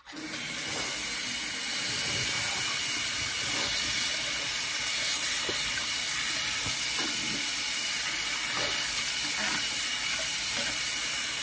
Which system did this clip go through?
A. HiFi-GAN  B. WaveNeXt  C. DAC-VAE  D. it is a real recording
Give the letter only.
D